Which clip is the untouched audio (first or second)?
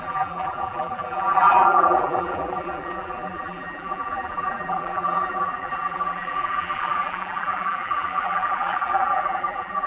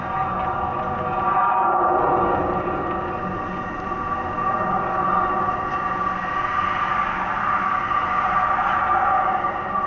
second